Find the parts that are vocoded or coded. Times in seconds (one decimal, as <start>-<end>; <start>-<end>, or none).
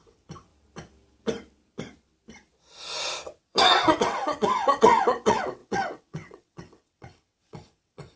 0.0-0.5; 3.4-8.2